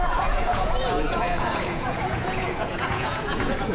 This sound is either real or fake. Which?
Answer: fake